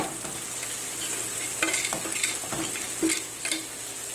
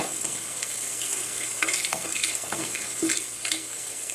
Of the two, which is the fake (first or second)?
second